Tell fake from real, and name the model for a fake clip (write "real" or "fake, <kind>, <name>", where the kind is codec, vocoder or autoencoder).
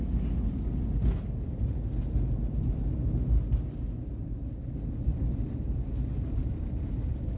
real